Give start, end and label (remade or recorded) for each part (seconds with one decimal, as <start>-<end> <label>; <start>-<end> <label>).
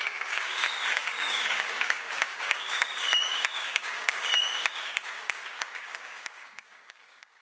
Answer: 0.0-7.4 remade